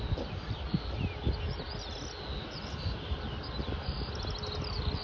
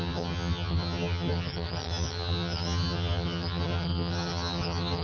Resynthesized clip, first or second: second